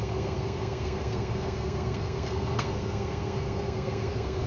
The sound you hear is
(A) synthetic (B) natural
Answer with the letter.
A